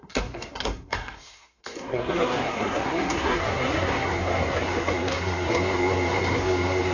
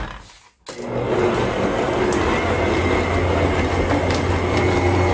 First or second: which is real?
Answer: second